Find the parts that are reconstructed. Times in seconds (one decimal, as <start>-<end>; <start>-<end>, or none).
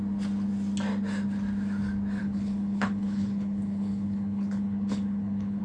2.2-5.6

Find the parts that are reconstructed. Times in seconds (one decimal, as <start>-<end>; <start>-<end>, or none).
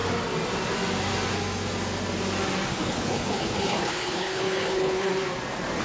2.7-5.1